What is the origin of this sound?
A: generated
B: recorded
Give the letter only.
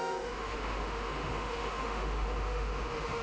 A